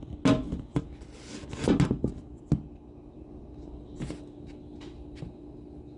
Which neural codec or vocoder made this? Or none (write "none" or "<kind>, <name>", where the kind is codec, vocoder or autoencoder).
none